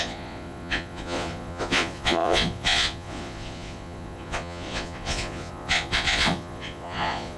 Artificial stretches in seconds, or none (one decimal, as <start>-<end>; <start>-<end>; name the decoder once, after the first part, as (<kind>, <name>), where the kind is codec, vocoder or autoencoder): 0.0-7.4 (vocoder, Vocos)